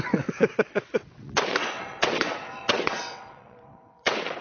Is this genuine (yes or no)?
no